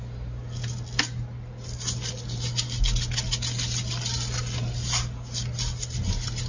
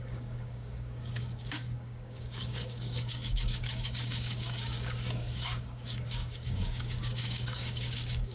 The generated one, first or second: second